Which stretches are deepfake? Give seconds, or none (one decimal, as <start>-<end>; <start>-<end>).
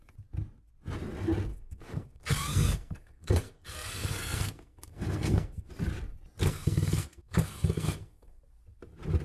1.5-5.7; 6.4-8.4